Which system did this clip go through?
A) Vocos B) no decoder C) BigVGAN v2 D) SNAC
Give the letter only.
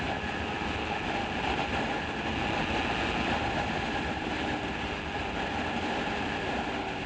B